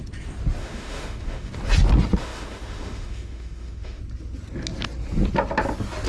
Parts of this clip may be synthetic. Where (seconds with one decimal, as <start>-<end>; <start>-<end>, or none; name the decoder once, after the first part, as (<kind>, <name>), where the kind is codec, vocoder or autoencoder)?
0.6-1.5 (autoencoder, DAC-VAE); 2.2-4.0